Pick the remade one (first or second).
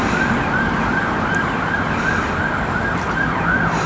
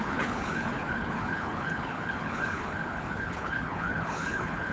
second